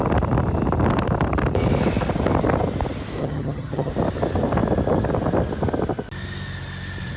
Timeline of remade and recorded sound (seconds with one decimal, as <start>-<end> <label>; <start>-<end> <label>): 0.0-3.2 recorded; 3.2-3.9 remade; 3.9-7.2 recorded